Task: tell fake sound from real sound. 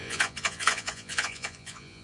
fake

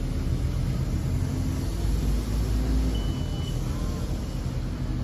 real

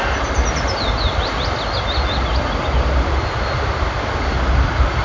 real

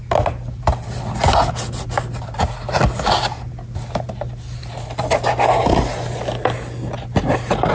real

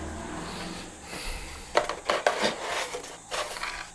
real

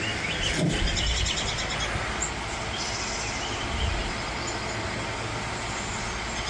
real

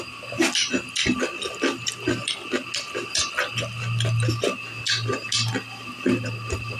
real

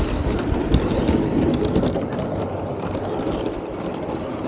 real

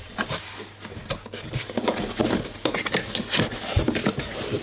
real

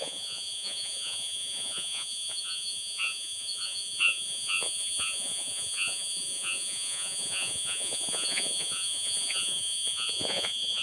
fake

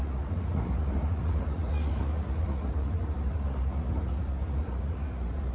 fake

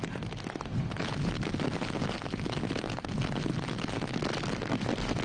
real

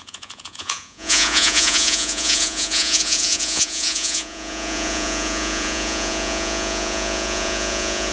fake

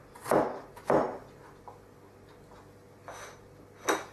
real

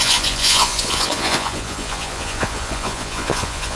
fake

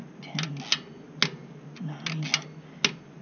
real